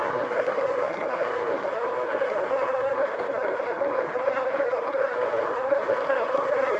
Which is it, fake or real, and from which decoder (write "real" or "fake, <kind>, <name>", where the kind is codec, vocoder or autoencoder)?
fake, codec, SNAC